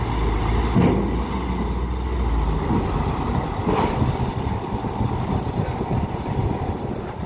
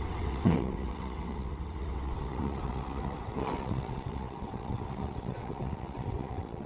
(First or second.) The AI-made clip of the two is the second